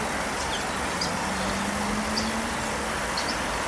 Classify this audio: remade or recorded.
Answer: recorded